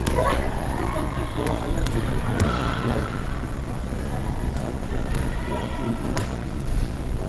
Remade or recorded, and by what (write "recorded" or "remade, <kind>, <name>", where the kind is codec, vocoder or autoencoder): remade, vocoder, Vocos